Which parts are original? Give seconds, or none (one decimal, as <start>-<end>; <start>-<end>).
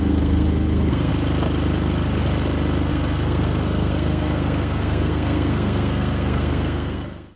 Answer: 1.1-2.9